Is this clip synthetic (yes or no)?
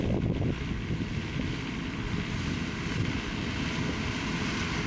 no